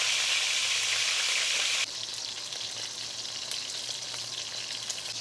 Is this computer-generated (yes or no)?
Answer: no